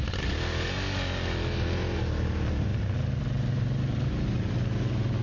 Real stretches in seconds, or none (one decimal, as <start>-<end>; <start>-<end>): 0.0-5.2